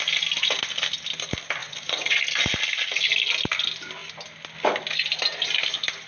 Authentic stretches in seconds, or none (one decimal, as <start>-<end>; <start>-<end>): 0.0-1.6; 2.2-6.1